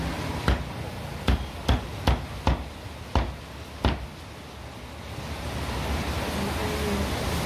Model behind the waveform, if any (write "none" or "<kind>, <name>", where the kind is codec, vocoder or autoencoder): none